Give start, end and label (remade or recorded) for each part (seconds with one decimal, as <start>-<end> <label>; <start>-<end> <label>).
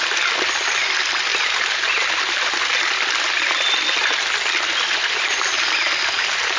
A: 0.0-6.6 recorded